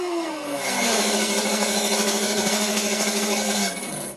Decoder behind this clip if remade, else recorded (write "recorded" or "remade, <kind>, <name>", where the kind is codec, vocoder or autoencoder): remade, codec, SNAC